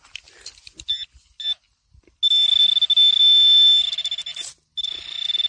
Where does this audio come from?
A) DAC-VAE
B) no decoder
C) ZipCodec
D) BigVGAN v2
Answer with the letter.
B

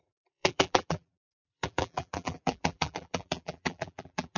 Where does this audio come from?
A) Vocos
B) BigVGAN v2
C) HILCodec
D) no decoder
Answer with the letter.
B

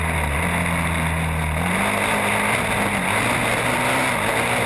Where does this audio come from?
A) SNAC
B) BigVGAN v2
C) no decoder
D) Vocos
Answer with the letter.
C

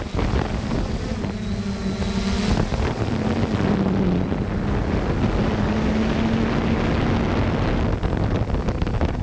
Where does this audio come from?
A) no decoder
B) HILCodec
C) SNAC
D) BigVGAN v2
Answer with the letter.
A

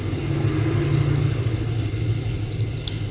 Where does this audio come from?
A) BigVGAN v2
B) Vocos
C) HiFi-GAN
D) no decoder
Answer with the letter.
D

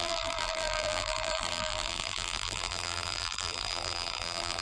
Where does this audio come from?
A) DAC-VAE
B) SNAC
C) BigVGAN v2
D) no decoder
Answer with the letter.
C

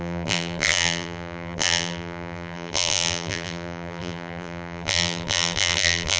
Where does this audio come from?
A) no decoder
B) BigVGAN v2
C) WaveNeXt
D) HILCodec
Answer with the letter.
B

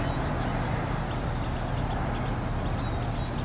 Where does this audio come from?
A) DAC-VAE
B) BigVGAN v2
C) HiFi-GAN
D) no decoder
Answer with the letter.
D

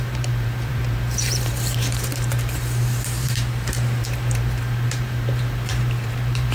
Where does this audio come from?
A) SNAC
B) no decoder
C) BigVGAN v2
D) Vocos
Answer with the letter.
C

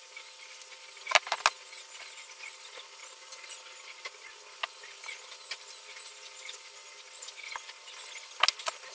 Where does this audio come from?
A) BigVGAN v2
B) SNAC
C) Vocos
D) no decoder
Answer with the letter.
D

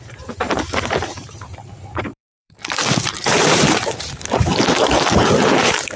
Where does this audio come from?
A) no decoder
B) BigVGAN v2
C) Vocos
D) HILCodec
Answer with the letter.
B